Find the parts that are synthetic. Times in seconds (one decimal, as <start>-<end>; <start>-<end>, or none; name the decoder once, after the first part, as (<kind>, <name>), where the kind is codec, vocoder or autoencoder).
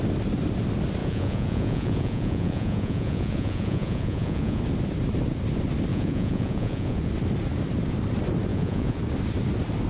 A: 1.0-4.6 (vocoder, Vocos); 5.9-7.1; 8.5-9.0